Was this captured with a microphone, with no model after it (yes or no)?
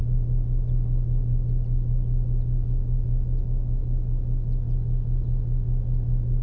yes